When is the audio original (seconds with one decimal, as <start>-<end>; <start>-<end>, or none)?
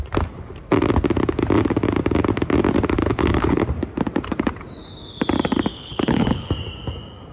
0.0-3.0; 3.6-5.7; 6.5-7.3